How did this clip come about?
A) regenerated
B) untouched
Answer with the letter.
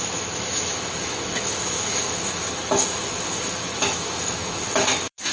A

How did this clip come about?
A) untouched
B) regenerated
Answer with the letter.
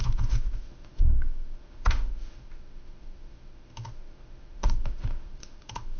B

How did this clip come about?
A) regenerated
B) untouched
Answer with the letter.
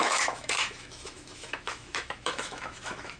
A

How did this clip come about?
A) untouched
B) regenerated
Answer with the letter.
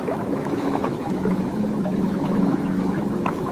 B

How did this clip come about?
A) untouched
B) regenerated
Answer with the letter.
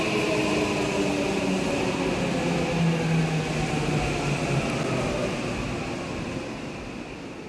A